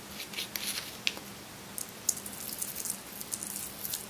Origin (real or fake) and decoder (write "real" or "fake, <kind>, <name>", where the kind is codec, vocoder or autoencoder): real